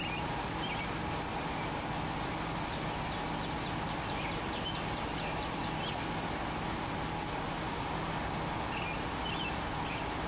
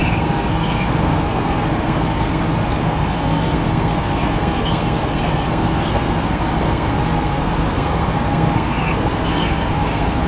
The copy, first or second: second